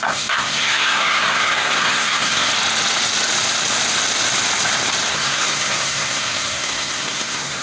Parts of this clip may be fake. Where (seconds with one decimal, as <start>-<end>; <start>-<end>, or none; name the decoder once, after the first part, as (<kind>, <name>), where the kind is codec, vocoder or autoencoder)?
0.0-2.5 (codec, SNAC); 5.1-7.6

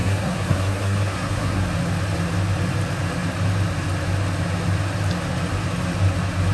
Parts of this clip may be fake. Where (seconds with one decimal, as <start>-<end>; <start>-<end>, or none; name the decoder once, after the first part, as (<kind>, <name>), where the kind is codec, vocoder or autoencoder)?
0.0-1.6 (codec, SNAC)

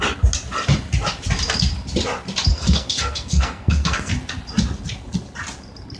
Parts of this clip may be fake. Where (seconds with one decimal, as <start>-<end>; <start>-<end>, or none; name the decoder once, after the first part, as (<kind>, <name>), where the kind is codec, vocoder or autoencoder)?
2.5-4.1 (codec, SNAC)

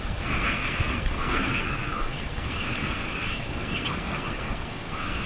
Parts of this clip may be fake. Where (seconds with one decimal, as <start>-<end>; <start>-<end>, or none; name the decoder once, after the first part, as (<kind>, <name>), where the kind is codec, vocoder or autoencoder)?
0.0-5.3 (codec, SNAC)

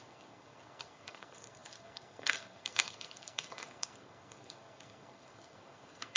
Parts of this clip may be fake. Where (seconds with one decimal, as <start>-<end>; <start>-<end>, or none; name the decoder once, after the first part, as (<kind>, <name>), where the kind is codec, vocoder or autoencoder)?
0.0-6.2 (codec, SNAC)

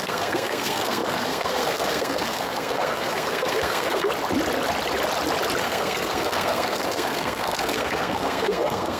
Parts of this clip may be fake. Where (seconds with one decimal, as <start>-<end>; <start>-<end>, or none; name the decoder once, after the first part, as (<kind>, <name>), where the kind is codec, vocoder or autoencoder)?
0.0-4.1 (codec, SNAC); 5.6-9.0